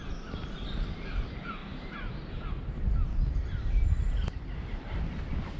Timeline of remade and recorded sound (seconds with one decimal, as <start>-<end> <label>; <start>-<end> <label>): 0.0-1.6 recorded; 1.6-4.4 remade; 4.4-5.6 recorded